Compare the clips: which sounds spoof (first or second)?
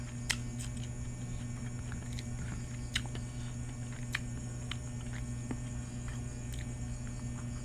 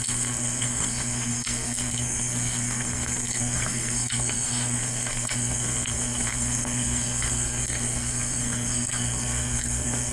second